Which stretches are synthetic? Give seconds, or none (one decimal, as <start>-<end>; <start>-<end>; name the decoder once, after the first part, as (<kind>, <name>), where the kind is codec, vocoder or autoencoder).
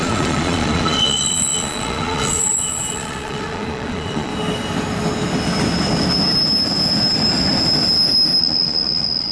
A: 0.0-4.3 (vocoder, Vocos); 8.4-9.3